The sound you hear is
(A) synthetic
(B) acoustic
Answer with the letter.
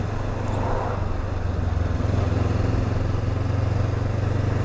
B